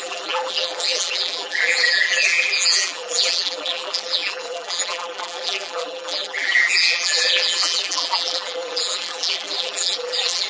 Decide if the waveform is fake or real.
fake